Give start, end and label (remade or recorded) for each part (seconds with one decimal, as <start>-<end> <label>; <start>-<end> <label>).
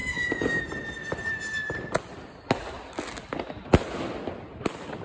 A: 0.0-0.6 remade; 0.6-5.0 recorded